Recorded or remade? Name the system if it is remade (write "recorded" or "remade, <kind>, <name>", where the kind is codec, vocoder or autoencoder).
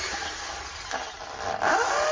recorded